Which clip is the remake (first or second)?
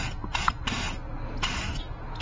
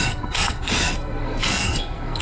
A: second